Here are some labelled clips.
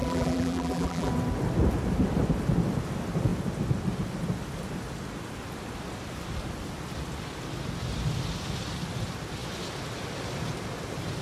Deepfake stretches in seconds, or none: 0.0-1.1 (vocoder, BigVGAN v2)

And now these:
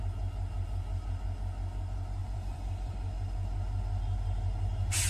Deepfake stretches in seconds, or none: 2.2-2.9 (vocoder, BigVGAN v2)

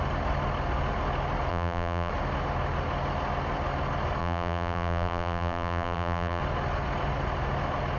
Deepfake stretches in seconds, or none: 1.5-2.1 (vocoder, BigVGAN v2); 4.2-6.4

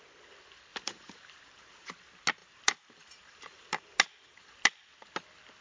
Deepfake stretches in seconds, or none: 0.7-1.9 (vocoder, BigVGAN v2); 2.4-4.5

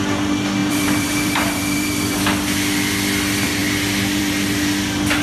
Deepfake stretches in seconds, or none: 0.6-2.2 (vocoder, BigVGAN v2)

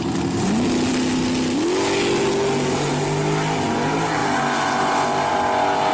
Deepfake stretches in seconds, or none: none

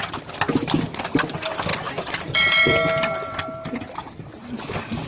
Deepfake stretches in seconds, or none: 0.0-5.1 (vocoder, BigVGAN v2)